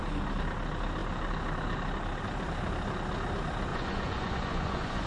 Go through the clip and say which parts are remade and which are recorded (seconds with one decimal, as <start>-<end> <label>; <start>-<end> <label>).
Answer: 0.0-3.7 recorded; 3.7-5.1 remade